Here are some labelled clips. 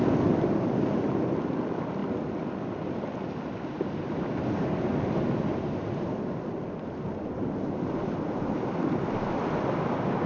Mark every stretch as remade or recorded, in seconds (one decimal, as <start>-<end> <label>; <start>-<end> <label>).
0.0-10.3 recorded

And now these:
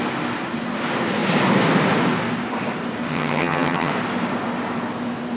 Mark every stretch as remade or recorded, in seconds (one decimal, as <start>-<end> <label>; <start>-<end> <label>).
0.0-3.1 recorded; 3.1-3.9 remade; 3.9-5.4 recorded

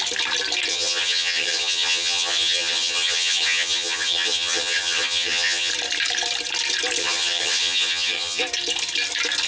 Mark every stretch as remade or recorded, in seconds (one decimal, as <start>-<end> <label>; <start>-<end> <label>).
0.0-0.7 recorded; 0.7-5.7 remade; 5.7-7.0 recorded; 7.0-8.4 remade; 8.4-9.5 recorded